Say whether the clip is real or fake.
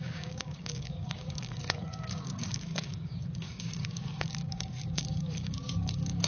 fake